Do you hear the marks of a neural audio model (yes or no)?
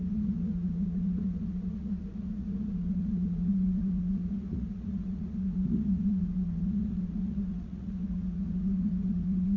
yes